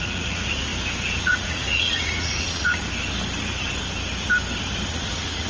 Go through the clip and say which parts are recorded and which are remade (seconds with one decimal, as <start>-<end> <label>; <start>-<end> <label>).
0.0-0.7 remade; 0.7-1.2 recorded; 1.2-2.8 remade; 2.8-4.9 recorded; 4.9-5.5 remade